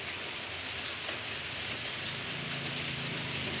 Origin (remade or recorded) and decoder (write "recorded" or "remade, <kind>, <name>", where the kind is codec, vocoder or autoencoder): recorded